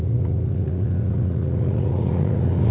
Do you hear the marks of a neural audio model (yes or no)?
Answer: yes